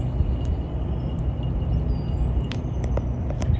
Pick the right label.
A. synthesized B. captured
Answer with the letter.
B